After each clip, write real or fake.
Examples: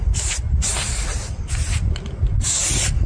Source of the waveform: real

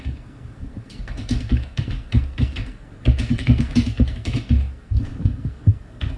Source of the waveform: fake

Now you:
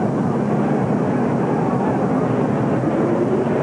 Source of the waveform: real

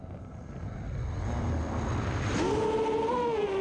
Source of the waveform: real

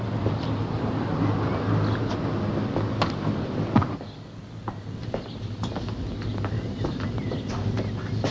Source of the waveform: real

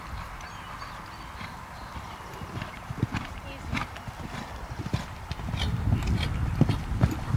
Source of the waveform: real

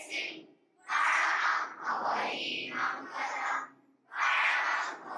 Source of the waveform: real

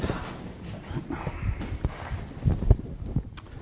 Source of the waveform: real